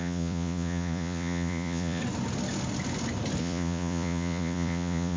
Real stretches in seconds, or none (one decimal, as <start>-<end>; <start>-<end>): 2.0-3.4